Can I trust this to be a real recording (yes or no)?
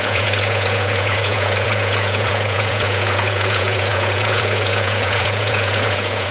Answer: no